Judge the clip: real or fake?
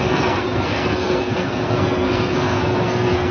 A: fake